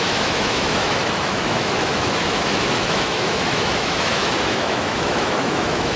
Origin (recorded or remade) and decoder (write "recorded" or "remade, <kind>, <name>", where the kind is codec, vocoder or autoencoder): remade, autoencoder, DAC-VAE